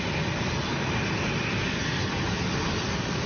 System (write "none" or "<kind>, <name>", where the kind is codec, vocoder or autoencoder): none